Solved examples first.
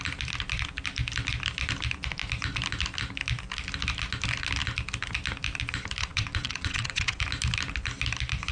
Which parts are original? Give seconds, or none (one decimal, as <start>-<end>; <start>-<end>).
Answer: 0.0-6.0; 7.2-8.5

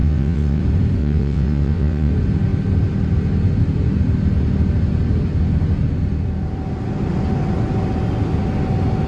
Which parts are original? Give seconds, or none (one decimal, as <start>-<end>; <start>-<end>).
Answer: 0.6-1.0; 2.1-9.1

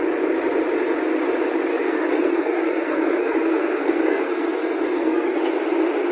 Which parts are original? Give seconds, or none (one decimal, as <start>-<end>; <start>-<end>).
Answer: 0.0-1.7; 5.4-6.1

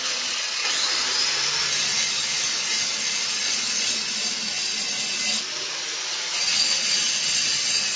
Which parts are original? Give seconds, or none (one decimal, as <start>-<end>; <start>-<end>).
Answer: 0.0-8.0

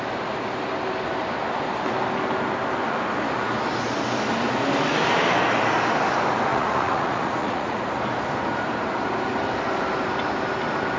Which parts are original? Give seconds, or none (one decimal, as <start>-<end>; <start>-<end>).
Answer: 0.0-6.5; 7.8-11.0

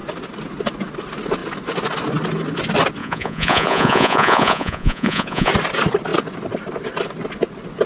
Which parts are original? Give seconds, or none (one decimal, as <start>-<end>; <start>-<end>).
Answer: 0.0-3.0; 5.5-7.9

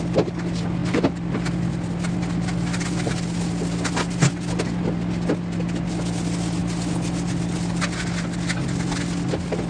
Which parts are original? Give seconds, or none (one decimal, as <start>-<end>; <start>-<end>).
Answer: 0.0-9.7

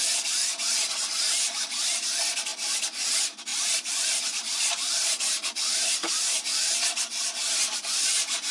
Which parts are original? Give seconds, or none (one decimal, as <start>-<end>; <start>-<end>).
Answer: 0.0-3.5; 7.2-8.5